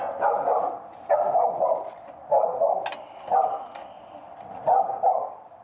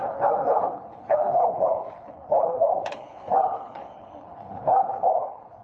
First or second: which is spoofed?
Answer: second